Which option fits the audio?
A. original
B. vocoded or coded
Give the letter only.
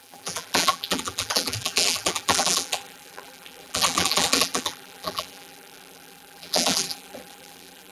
B